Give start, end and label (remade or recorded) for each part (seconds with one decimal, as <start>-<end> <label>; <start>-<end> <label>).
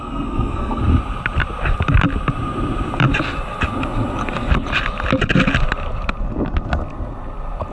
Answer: 0.0-0.8 remade; 0.8-7.7 recorded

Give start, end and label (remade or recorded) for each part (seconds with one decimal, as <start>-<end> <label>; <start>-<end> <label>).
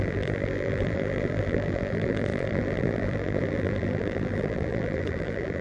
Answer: 0.0-5.6 remade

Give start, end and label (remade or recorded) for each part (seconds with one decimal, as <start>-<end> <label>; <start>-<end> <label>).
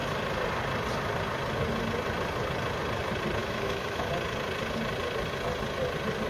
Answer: 0.0-3.4 recorded; 3.4-4.1 remade; 4.1-6.3 recorded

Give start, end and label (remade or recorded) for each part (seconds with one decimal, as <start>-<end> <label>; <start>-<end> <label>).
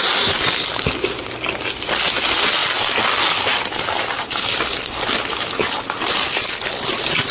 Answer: 0.0-7.3 recorded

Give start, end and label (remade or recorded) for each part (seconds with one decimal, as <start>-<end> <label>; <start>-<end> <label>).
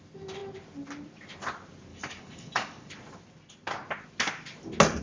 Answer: 0.0-1.9 recorded; 1.9-2.9 remade; 2.9-5.0 recorded